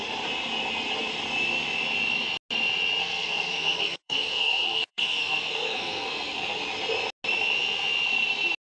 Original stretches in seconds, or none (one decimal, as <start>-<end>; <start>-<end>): 0.0-3.0; 6.6-8.6